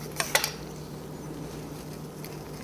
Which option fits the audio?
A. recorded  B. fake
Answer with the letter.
A